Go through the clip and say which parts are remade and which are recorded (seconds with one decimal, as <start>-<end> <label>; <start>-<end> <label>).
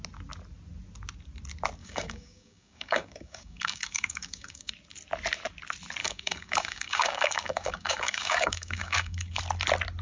0.0-1.8 recorded; 1.8-4.7 remade; 4.7-6.0 recorded; 6.0-9.4 remade; 9.4-10.0 recorded